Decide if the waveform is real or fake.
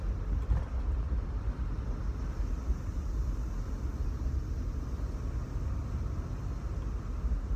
real